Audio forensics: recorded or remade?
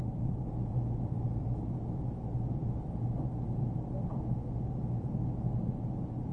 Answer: recorded